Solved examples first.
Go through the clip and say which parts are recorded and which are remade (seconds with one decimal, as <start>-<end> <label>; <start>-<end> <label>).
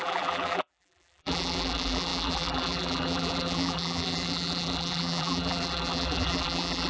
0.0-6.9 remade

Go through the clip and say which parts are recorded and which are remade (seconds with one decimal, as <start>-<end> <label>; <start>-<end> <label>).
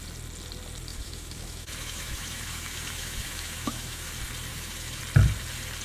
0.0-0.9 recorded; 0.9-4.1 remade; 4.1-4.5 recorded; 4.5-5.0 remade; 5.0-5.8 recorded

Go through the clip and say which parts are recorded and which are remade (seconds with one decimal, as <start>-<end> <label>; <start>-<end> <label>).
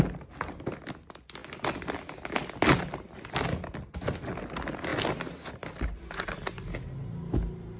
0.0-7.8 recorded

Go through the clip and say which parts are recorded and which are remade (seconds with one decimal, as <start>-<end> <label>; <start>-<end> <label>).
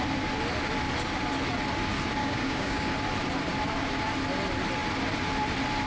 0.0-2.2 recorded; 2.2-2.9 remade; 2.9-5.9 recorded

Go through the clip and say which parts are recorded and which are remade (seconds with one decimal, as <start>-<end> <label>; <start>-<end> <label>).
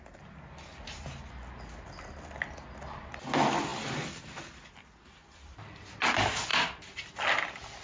0.0-7.8 recorded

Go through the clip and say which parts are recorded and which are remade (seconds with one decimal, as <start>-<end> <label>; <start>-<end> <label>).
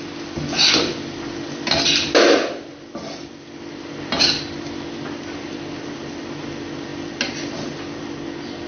0.0-8.7 recorded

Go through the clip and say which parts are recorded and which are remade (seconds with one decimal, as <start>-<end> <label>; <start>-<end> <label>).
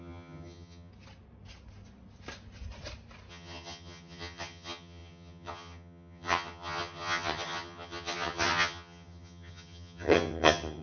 0.0-0.9 remade; 0.9-3.3 recorded; 3.3-10.8 remade